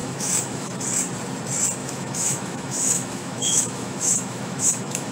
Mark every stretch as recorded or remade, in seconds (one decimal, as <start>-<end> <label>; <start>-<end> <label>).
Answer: 0.0-0.8 remade; 0.8-1.8 recorded; 1.8-5.1 remade